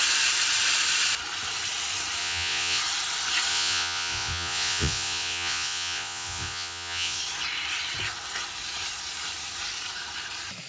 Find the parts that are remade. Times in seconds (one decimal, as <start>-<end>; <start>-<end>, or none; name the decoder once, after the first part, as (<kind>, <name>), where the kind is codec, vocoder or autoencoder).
2.2-2.8 (vocoder, Vocos); 3.5-7.2